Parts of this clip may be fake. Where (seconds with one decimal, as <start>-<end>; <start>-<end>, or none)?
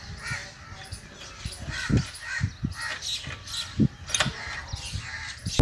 none